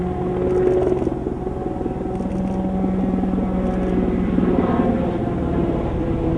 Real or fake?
real